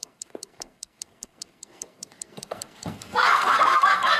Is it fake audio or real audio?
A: fake